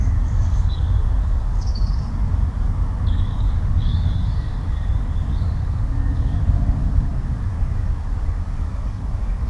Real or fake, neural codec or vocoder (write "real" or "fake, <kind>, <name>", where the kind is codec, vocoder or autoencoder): fake, codec, DAC